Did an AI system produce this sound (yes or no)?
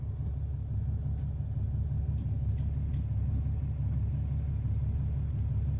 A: no